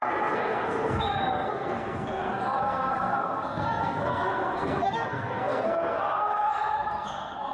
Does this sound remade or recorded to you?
remade